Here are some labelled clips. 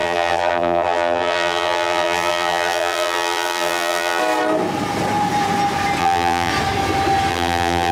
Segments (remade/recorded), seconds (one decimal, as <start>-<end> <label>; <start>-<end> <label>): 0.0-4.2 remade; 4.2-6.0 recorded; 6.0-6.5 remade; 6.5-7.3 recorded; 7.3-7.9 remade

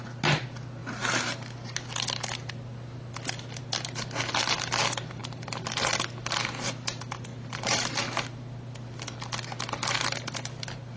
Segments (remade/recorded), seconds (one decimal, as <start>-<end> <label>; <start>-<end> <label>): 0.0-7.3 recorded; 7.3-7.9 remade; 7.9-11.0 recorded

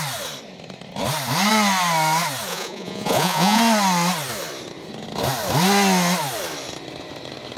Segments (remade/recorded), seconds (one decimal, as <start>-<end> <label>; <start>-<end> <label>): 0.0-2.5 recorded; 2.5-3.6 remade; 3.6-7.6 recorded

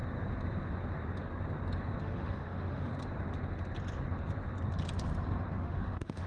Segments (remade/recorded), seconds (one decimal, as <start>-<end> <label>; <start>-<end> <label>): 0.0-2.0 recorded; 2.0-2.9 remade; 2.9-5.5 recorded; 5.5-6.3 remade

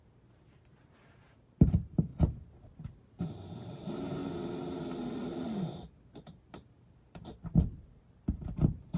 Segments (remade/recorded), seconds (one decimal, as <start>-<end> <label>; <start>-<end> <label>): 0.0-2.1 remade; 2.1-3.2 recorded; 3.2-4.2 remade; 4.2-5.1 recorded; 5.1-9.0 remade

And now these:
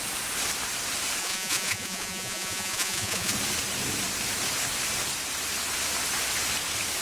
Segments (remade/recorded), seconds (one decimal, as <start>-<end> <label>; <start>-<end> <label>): 0.0-1.2 recorded; 1.2-3.3 remade; 3.3-7.0 recorded

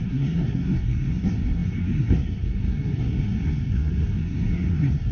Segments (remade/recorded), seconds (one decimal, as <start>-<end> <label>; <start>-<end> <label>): 0.0-5.1 remade

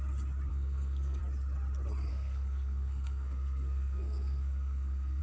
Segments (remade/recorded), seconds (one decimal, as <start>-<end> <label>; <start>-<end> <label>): 0.0-0.5 recorded; 0.5-1.2 remade; 1.2-2.1 recorded; 2.1-5.2 remade